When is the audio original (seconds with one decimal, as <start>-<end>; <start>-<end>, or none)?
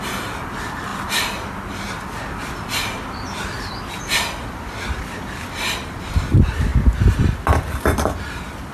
0.0-8.7